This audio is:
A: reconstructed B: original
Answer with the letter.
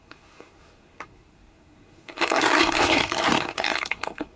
A